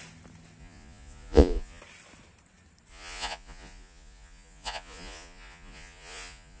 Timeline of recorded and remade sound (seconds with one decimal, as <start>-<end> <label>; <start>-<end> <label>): 0.0-0.6 recorded; 0.6-1.8 remade; 1.8-2.9 recorded; 2.9-6.6 remade